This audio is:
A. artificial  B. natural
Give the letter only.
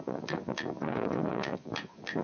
A